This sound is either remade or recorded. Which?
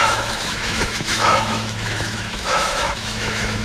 remade